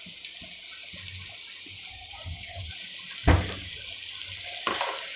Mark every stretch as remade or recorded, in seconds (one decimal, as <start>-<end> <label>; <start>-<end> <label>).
0.0-1.9 recorded; 1.9-2.7 remade; 2.7-5.2 recorded